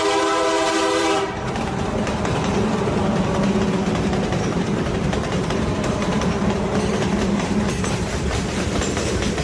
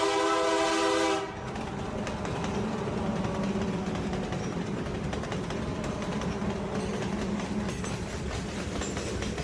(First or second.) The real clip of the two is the second